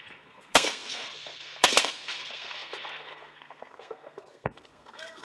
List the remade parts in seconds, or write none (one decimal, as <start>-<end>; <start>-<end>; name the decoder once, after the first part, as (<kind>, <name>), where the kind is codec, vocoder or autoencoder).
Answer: 0.0-5.2 (codec, SNAC)